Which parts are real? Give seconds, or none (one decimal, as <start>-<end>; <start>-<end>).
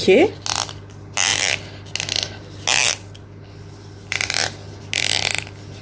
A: 0.0-5.8